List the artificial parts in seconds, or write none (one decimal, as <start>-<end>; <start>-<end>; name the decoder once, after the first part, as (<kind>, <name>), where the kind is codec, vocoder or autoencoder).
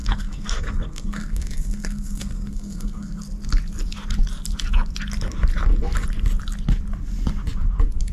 0.0-3.2 (codec, SNAC)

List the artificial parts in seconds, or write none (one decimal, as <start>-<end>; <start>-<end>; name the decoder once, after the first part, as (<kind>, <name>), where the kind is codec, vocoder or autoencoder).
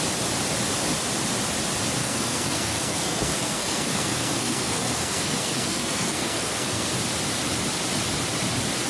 2.0-6.9 (codec, SNAC)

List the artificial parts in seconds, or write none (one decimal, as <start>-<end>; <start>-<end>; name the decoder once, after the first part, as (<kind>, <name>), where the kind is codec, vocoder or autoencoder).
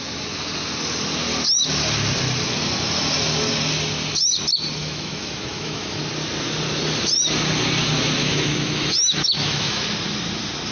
4.8-6.0 (autoencoder, DAC-VAE); 8.2-9.8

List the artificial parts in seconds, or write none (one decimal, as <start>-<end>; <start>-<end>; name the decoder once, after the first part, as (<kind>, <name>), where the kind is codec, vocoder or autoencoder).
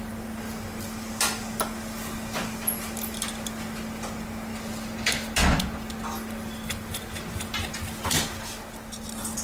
none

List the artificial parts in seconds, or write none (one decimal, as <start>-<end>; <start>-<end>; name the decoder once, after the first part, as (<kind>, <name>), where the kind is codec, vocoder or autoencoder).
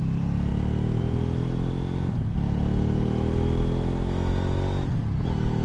none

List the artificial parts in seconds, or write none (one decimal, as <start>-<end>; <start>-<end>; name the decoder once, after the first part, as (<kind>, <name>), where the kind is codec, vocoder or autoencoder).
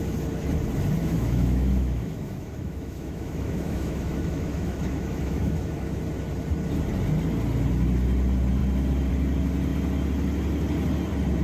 1.0-6.0 (autoencoder, DAC-VAE)